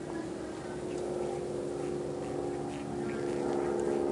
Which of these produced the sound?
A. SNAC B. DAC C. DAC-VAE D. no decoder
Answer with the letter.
D